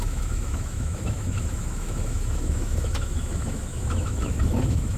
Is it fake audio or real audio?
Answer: fake